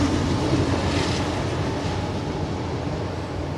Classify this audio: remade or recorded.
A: recorded